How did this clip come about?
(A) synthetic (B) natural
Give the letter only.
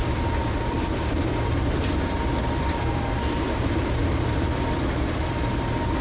A